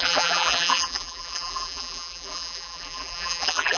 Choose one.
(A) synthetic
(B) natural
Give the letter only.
A